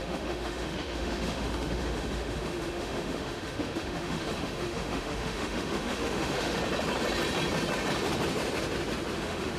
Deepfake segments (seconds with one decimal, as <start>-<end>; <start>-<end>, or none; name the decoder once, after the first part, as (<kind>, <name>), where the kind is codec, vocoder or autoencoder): 0.0-6.6 (autoencoder, DAC-VAE); 9.2-9.6

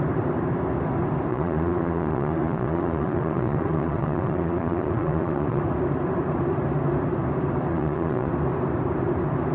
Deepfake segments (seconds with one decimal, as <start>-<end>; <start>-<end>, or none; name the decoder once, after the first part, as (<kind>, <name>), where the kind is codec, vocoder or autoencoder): 1.3-5.6 (vocoder, Vocos); 7.7-8.3

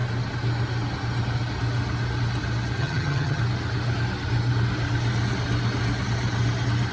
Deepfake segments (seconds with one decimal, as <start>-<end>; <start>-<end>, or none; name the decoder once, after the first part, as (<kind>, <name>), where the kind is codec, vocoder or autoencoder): 2.8-3.4 (vocoder, HiFi-GAN)

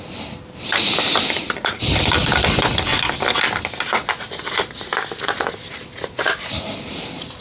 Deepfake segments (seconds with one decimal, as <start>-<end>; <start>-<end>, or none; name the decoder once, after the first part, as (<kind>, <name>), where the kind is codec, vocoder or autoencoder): none

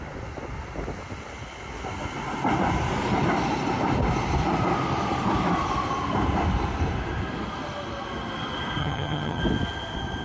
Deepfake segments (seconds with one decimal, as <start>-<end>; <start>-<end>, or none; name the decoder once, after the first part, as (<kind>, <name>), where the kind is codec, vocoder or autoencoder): 8.8-9.4 (vocoder, HiFi-GAN)

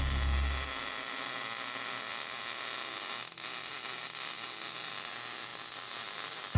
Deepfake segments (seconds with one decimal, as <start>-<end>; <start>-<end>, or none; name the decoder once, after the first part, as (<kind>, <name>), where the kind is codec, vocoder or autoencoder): none